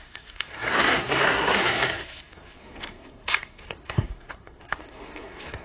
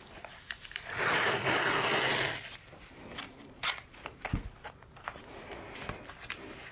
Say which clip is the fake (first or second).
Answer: first